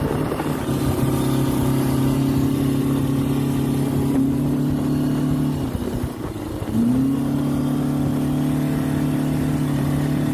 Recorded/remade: recorded